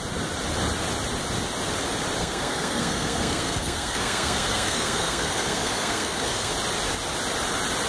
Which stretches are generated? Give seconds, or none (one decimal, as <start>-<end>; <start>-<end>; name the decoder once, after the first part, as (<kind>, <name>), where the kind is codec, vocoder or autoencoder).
2.2-6.5 (codec, SNAC)